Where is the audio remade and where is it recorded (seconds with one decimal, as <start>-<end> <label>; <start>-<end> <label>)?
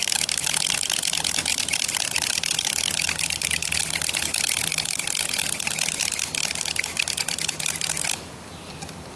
0.0-9.2 recorded